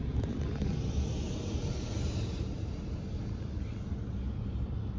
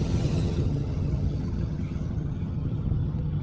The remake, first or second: second